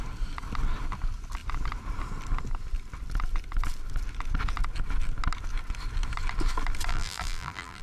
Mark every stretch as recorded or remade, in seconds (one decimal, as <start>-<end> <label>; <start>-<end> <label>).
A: 0.0-6.9 recorded; 6.9-7.8 remade